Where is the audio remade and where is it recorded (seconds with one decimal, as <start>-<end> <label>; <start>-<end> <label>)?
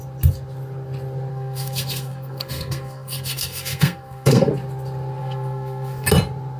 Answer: 0.0-1.3 recorded; 1.3-4.5 remade; 4.5-5.2 recorded; 5.2-6.1 remade; 6.1-6.6 recorded